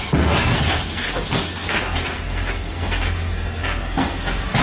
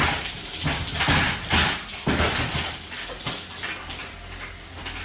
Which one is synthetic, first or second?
first